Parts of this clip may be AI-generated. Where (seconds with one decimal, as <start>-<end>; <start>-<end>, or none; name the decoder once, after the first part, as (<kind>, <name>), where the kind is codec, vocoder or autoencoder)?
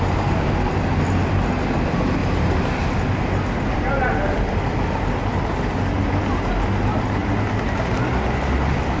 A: none